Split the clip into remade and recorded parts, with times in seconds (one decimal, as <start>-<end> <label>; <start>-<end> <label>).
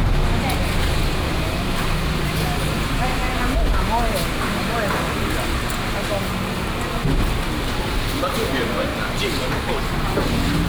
0.0-0.6 recorded; 0.6-3.2 remade; 3.2-7.8 recorded; 7.8-8.9 remade; 8.9-9.8 recorded; 9.8-10.7 remade